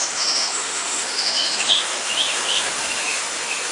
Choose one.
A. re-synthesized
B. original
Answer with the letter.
A